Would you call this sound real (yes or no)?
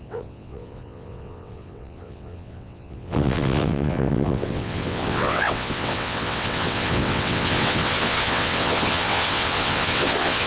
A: no